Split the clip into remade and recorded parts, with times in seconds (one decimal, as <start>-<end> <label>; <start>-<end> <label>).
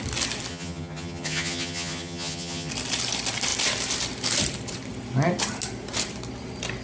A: 0.0-0.5 recorded; 0.5-2.7 remade; 2.7-6.8 recorded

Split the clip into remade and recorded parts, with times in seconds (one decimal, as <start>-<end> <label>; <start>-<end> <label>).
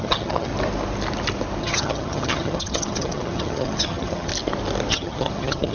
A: 0.0-0.5 remade; 0.5-1.6 recorded; 1.6-4.3 remade; 4.3-4.9 recorded; 4.9-5.7 remade